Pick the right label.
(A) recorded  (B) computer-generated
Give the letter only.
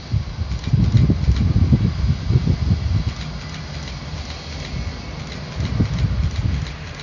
A